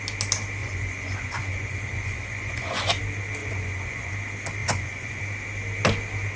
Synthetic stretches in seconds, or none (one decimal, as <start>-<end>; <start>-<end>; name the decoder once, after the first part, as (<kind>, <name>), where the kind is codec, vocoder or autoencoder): 0.6-3.0 (vocoder, Vocos); 3.4-4.1; 4.6-5.2